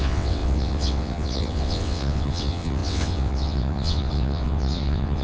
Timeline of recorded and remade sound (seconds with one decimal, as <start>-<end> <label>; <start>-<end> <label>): 0.0-5.2 remade